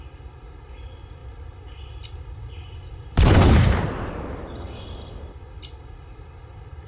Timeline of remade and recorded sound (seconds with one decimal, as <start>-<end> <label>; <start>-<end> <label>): 0.0-1.2 recorded; 1.2-5.3 remade; 5.3-6.9 recorded